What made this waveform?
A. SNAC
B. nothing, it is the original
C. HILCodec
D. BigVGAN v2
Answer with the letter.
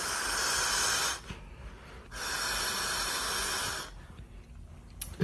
B